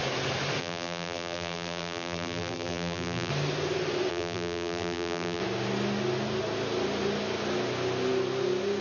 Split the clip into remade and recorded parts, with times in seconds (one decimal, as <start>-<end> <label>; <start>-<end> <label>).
0.0-0.6 recorded; 0.6-3.3 remade; 3.3-4.1 recorded; 4.1-5.4 remade; 5.4-8.8 recorded